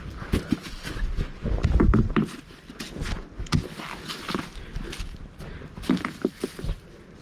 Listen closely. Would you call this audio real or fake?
real